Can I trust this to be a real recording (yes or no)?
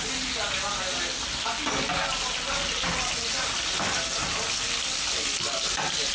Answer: yes